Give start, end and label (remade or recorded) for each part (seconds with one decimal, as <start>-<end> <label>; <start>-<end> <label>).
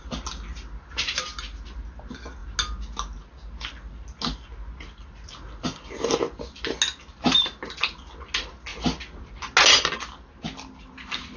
0.0-8.7 recorded; 8.7-9.3 remade; 9.3-11.4 recorded